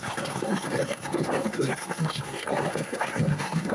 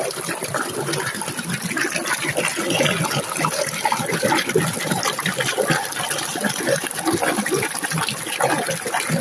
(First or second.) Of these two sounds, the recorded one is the second